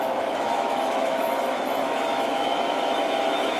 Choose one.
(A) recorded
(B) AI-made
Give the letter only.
B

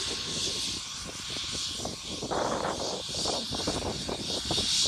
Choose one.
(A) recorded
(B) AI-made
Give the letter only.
B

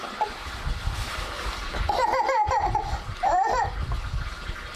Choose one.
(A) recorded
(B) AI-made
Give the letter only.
A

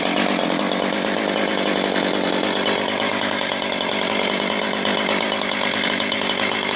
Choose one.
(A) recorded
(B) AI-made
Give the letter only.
A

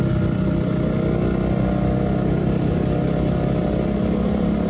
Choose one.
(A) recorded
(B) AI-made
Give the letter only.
A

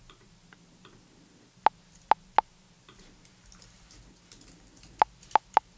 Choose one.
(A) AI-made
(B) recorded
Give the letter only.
B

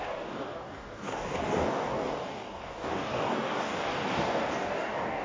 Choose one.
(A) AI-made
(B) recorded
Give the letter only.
A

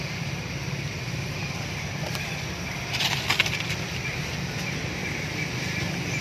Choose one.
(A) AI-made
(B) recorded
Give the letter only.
B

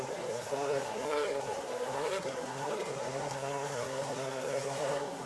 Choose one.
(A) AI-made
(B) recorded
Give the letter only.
A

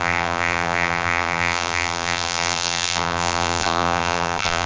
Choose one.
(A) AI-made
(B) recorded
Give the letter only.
A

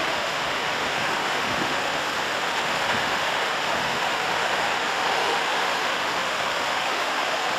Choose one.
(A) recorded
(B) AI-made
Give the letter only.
B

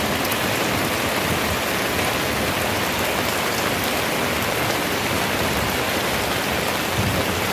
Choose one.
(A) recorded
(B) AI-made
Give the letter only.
A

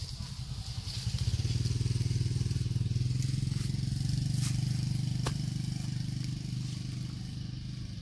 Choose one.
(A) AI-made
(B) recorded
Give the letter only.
B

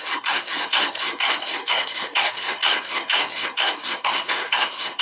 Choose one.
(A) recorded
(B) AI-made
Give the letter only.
B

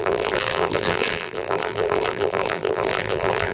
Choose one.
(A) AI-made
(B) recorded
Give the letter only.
A